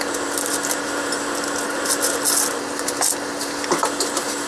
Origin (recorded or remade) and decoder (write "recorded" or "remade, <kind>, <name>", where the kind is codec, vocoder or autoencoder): recorded